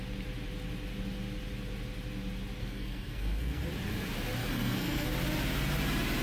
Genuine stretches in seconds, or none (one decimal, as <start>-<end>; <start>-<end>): 0.0-2.6; 3.6-4.4; 5.1-6.2

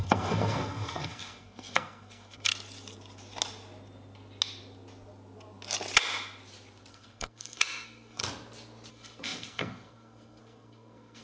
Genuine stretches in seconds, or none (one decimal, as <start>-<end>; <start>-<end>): 2.5-6.9; 8.2-8.9

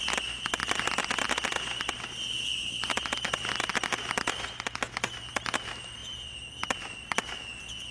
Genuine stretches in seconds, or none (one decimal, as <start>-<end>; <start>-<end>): 0.0-7.9

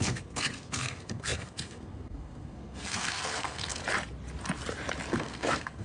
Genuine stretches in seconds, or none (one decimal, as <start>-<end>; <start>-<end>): 3.8-5.1